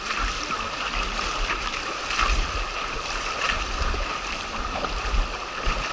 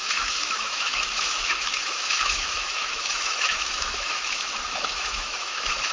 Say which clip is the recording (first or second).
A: first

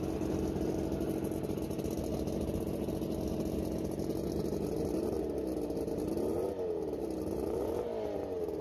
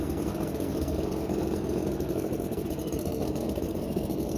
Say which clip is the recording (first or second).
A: first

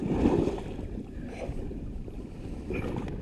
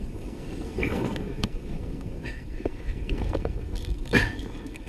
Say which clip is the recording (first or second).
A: first